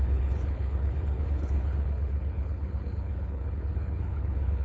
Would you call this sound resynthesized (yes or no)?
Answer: yes